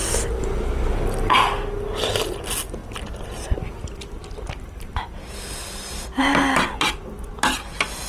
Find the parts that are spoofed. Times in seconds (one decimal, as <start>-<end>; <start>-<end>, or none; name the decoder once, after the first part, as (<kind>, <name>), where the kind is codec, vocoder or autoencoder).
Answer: none